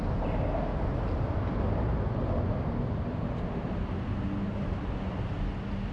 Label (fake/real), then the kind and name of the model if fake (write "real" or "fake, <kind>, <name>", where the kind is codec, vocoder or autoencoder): real